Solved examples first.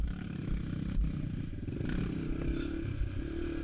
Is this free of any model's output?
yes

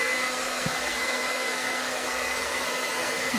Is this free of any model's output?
no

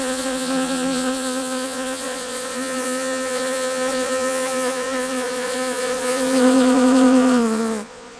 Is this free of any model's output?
no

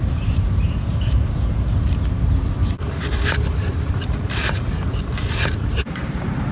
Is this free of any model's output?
no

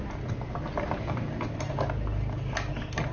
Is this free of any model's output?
yes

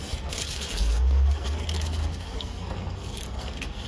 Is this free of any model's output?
no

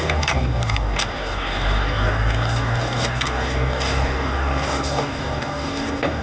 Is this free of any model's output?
no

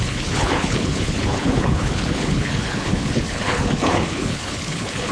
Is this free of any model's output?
no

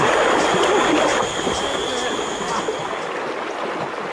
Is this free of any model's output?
yes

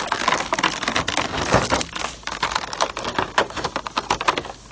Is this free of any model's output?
yes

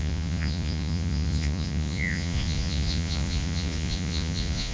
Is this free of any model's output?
no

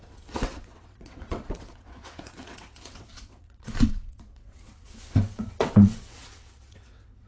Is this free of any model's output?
no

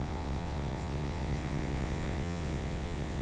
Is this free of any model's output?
no